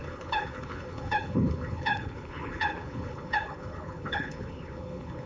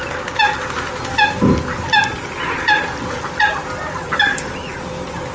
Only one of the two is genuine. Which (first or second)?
second